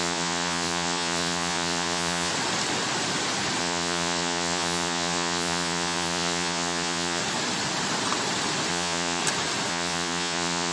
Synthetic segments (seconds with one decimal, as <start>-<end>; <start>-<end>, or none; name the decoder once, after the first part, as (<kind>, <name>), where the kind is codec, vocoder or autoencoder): 0.0-2.3 (vocoder, Vocos); 3.6-7.2; 8.7-9.2; 9.7-10.7